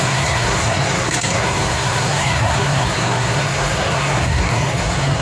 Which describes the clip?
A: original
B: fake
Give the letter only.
B